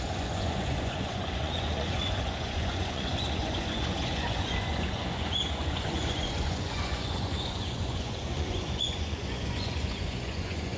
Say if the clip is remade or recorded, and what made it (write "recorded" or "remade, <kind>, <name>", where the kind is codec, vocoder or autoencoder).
remade, vocoder, Vocos